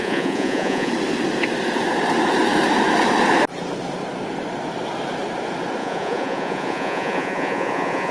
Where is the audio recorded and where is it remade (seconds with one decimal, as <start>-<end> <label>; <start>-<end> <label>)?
0.0-0.9 remade; 0.9-5.8 recorded; 5.8-8.1 remade